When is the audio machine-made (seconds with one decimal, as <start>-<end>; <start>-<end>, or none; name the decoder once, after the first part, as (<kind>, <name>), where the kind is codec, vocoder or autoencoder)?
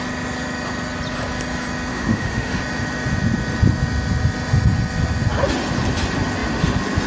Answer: 1.9-2.6 (autoencoder, DAC-VAE)